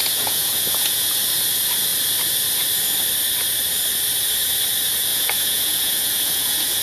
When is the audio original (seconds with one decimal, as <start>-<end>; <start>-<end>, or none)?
1.2-5.1